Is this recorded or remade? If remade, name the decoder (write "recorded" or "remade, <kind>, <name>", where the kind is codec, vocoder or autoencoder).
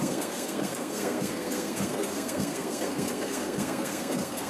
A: remade, codec, SNAC